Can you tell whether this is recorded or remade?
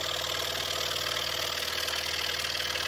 recorded